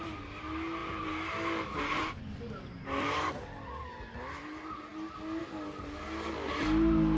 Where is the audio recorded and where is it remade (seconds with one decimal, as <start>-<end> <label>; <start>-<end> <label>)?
0.0-7.2 recorded